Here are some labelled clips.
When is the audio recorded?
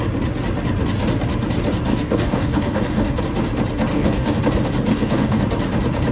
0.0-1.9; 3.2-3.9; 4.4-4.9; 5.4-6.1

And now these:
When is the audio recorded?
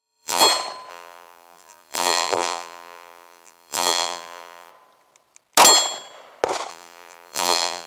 0.4-0.9; 4.7-6.7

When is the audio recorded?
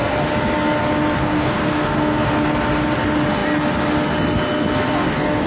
0.0-1.2; 2.3-5.5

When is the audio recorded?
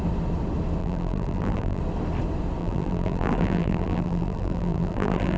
0.0-0.8; 1.8-2.6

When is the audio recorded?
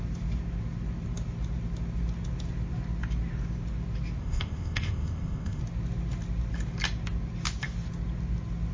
0.0-4.2; 5.6-8.7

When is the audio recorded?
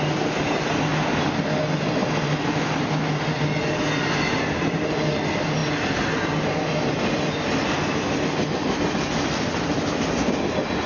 0.0-10.9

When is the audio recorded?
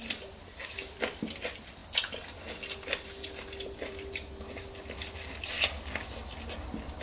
0.0-7.0